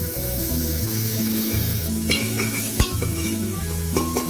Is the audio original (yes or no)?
no